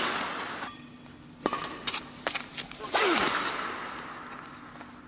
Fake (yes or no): no